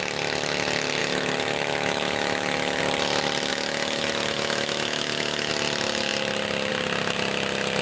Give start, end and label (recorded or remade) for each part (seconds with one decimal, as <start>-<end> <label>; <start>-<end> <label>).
0.0-1.0 recorded; 1.0-2.8 remade; 2.8-3.5 recorded; 3.5-5.5 remade; 5.5-7.8 recorded